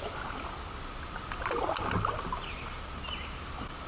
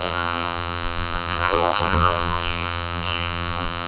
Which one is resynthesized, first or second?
second